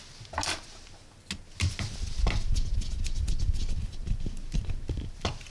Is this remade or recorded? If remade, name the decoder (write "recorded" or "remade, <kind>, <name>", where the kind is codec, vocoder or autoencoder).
recorded